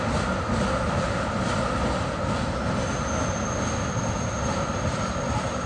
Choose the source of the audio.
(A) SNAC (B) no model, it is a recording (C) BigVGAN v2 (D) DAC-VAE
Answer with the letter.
B